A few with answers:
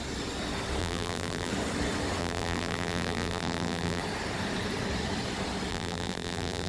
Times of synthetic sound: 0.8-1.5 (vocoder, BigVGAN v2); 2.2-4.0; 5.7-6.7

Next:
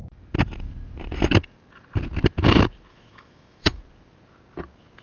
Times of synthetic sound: 2.9-3.8 (autoencoder, DAC-VAE)

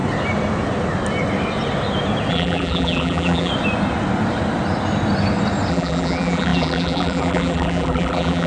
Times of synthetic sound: 2.3-3.5 (vocoder, BigVGAN v2); 5.7-8.5

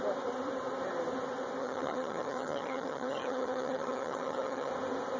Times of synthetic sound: 1.6-4.7 (vocoder, HiFi-GAN)

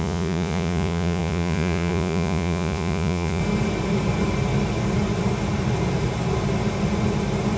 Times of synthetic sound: 0.0-3.4 (vocoder, Vocos)

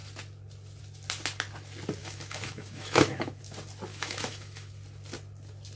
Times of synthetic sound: 2.0-3.4 (autoencoder, DAC-VAE); 3.9-4.7